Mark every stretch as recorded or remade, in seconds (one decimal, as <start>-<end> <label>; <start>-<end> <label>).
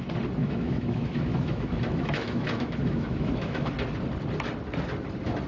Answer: 0.0-0.4 recorded; 0.4-3.7 remade; 3.7-5.5 recorded